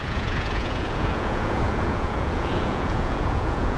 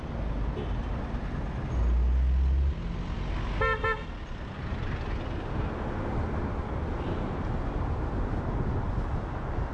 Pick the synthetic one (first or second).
first